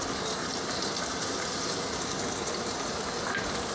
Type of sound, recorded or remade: recorded